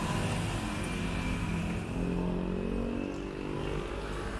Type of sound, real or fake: real